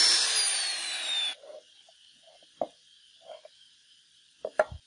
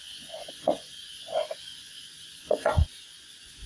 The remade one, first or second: second